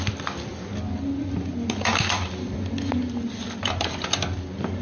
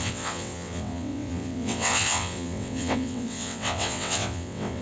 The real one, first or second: first